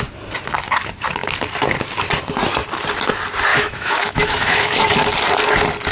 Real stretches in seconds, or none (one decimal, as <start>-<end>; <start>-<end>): 0.0-3.5; 4.8-5.9